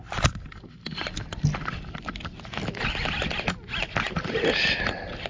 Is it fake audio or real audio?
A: real